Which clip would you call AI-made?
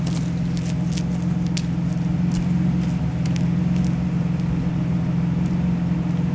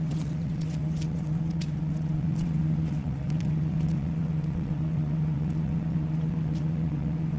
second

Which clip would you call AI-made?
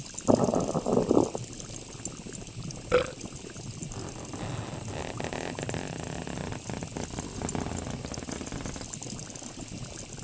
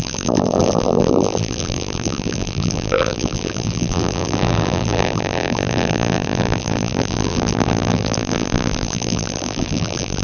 second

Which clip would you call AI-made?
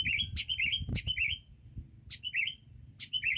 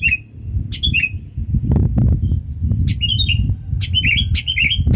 first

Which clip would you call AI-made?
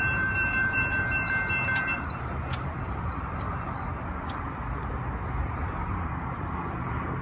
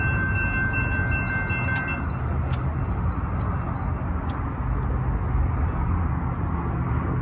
first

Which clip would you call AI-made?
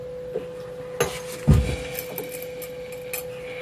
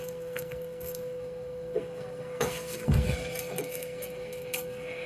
second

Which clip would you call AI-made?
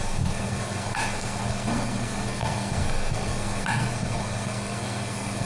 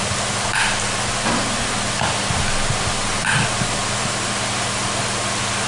first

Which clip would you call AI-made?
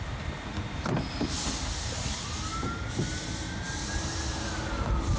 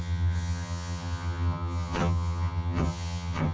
second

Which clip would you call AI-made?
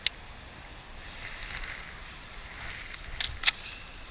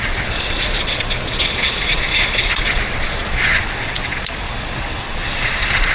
second